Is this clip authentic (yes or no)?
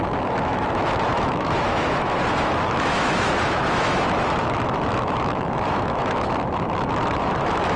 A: no